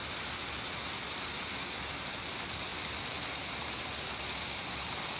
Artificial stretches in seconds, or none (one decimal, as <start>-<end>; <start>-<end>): none